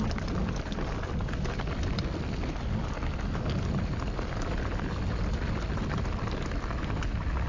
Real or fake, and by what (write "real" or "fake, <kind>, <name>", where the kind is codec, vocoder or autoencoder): real